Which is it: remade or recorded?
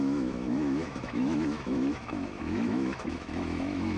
remade